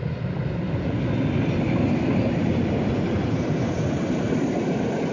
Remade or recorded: recorded